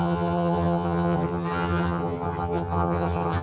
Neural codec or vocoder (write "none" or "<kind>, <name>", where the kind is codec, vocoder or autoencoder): vocoder, HiFi-GAN